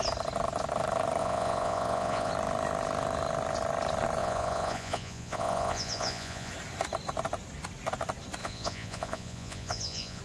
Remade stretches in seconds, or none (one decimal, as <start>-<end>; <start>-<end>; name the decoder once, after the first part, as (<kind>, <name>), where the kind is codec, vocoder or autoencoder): 1.2-2.3 (vocoder, Vocos); 4.2-6.5; 8.4-10.2